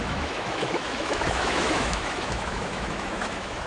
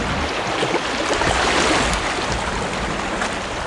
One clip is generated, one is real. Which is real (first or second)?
second